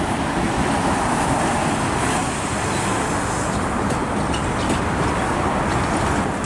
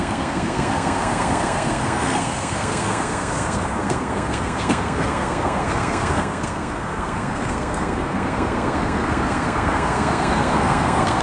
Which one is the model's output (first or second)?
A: second